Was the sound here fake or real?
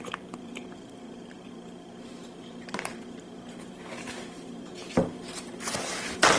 fake